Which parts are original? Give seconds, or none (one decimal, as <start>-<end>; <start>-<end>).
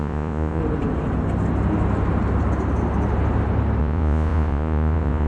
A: 0.6-3.8